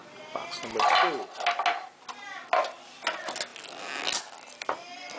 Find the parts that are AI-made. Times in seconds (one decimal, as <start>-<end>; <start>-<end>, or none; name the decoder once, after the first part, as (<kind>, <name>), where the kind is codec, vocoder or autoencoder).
none